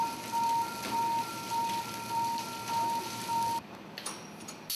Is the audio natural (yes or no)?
no